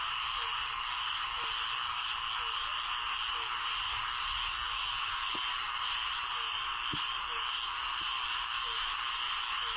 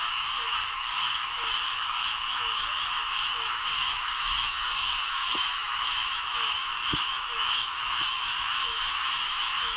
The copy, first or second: second